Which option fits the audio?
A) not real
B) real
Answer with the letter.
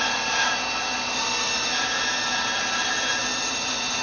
B